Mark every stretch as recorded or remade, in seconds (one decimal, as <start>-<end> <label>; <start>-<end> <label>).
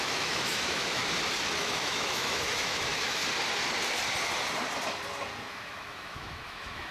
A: 0.0-1.0 remade; 1.0-1.6 recorded; 1.6-3.2 remade; 3.2-5.5 recorded; 5.5-6.9 remade